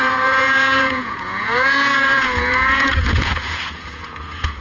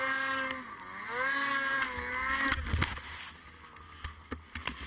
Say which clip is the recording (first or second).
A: second